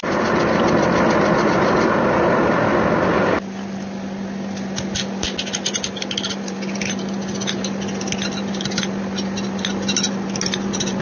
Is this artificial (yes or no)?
no